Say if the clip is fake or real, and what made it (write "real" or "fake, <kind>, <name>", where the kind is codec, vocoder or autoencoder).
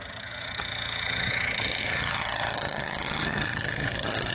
fake, vocoder, HiFi-GAN